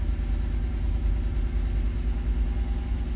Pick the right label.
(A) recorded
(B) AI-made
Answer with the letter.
A